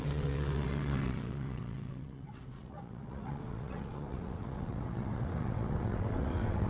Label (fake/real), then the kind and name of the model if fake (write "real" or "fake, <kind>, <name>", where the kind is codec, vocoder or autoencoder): fake, vocoder, WaveNeXt